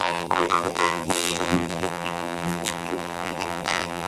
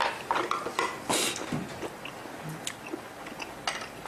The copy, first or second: first